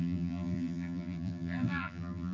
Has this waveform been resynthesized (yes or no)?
yes